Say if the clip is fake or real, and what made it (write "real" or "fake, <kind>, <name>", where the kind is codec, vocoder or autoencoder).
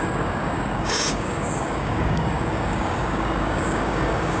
fake, codec, DAC